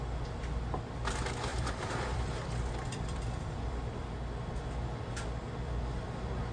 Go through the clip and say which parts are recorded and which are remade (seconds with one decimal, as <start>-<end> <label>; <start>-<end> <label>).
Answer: 0.0-1.5 recorded; 1.5-4.1 remade; 4.1-6.5 recorded

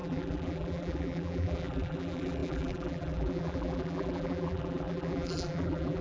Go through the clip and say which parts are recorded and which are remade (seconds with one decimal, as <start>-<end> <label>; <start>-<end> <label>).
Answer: 0.0-6.0 remade

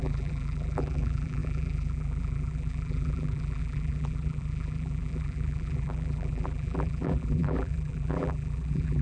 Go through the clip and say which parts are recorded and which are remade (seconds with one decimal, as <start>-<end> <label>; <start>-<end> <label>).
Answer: 0.0-9.0 remade

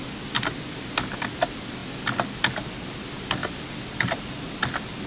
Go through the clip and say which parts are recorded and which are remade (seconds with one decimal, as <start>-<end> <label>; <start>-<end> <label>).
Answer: 0.0-3.4 recorded; 3.4-4.3 remade; 4.3-5.1 recorded